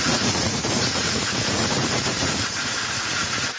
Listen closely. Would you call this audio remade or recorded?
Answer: remade